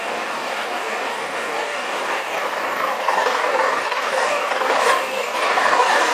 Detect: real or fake fake